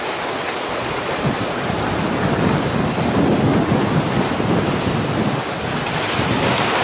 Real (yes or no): yes